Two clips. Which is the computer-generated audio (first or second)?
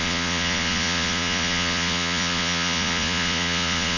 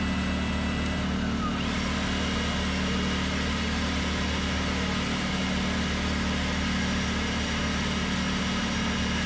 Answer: first